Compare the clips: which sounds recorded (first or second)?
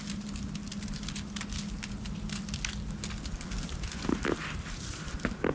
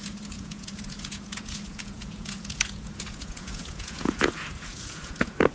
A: first